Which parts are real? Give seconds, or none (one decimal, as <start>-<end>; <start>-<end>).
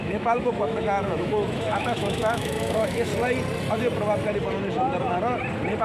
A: 3.1-5.8